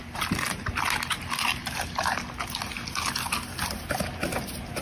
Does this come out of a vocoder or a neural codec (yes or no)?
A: no